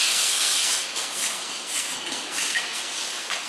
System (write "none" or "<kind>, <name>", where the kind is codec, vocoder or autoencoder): codec, SNAC